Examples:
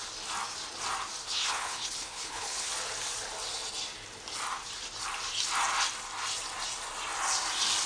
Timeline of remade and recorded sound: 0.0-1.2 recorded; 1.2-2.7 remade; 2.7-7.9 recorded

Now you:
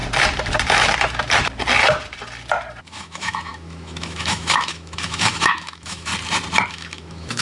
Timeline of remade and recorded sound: 0.0-2.8 recorded; 2.8-6.1 remade; 6.1-6.7 recorded; 6.7-7.4 remade

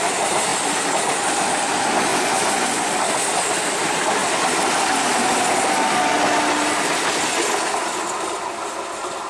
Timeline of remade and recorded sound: 0.0-2.1 recorded; 2.1-2.9 remade; 2.9-9.3 recorded

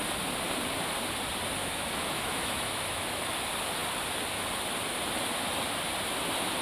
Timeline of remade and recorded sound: 0.0-1.6 recorded; 1.6-3.2 remade; 3.2-6.6 recorded

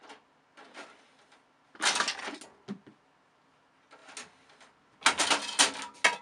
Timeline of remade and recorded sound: 0.0-6.2 recorded

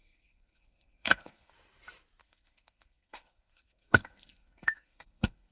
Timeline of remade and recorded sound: 0.0-1.5 remade; 1.5-2.2 recorded; 2.2-5.5 remade

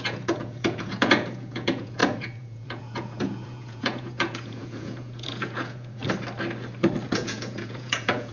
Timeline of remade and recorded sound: 0.0-6.0 remade; 6.0-7.1 recorded; 7.1-8.3 remade